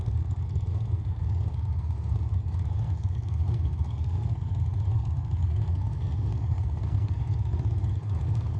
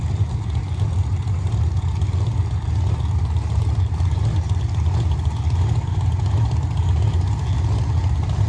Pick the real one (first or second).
second